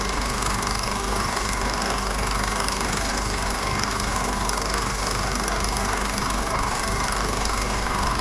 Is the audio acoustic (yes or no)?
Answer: no